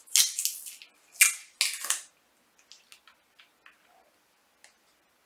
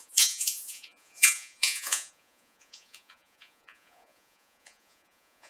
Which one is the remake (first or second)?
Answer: second